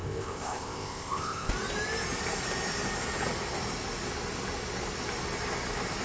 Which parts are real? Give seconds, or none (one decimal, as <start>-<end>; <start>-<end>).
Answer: 1.5-6.0